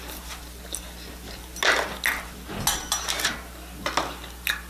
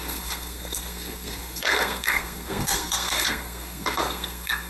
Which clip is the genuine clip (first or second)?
first